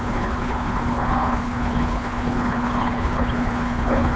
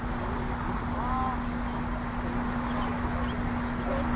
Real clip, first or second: second